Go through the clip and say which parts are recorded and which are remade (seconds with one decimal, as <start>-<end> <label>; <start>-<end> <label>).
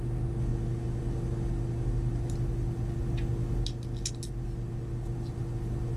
0.0-6.0 recorded